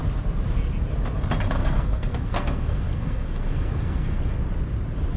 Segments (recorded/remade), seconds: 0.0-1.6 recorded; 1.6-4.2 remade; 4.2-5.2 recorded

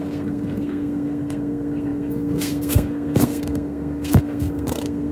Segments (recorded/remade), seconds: 0.0-5.1 remade

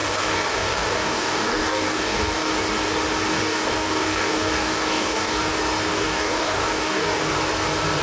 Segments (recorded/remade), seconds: 0.0-2.5 remade; 2.5-3.3 recorded; 3.3-5.4 remade; 5.4-5.9 recorded; 5.9-7.3 remade; 7.3-8.0 recorded

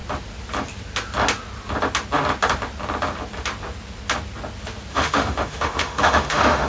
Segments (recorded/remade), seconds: 0.0-4.9 recorded; 4.9-6.7 remade

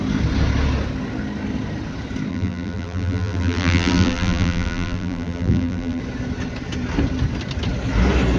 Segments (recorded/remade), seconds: 0.0-2.3 recorded; 2.3-6.0 remade; 6.0-8.4 recorded

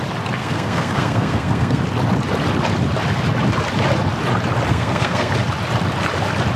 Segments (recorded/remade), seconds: 0.0-0.4 recorded; 0.4-1.8 remade; 1.8-4.7 recorded; 4.7-5.3 remade; 5.3-6.6 recorded